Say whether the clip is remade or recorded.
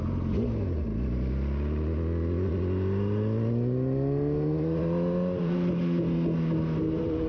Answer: recorded